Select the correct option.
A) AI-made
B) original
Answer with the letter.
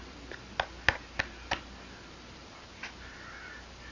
B